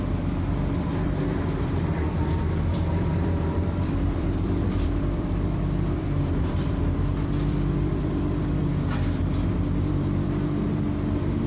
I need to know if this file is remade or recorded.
remade